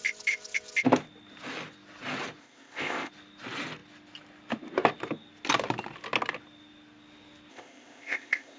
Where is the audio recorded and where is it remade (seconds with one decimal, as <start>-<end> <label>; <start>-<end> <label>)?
0.0-2.4 recorded; 2.4-3.1 remade; 3.1-7.5 recorded; 7.5-8.6 remade